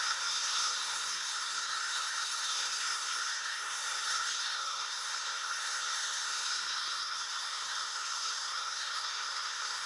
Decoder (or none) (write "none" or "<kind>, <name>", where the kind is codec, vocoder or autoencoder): codec, SNAC